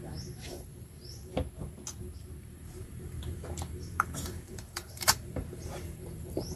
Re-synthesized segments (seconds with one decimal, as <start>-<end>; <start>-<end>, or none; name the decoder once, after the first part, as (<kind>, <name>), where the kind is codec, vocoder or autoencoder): 0.0-1.3 (vocoder, BigVGAN v2); 2.2-6.6